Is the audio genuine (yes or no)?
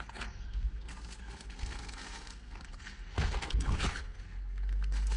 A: no